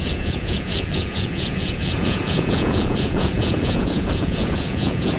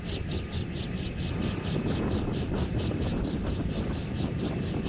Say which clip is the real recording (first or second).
second